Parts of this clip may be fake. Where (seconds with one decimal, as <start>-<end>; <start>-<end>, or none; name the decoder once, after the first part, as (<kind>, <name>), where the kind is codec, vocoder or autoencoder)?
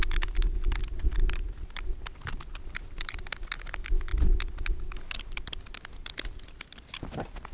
none